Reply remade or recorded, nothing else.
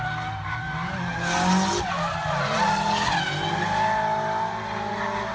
recorded